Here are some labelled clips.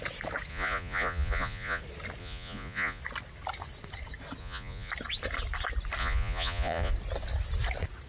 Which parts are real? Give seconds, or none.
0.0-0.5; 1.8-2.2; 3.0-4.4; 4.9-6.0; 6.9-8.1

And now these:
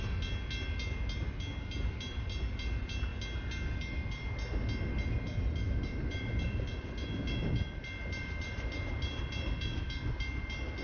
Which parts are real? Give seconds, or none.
0.0-10.8

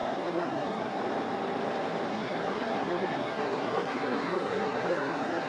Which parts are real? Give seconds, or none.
1.0-2.1

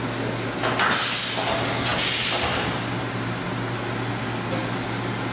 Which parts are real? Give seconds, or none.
0.0-5.3

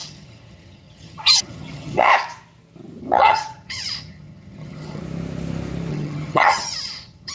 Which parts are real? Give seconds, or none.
2.1-3.0; 5.0-5.9

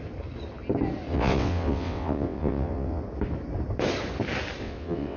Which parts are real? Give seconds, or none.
0.0-1.1; 3.0-4.6

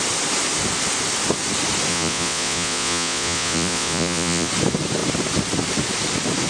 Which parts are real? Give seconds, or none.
0.0-1.9; 4.5-6.5

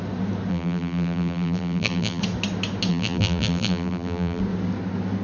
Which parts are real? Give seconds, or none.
0.0-0.5; 2.2-2.9; 4.4-5.2